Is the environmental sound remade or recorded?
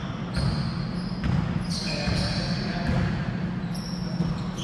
recorded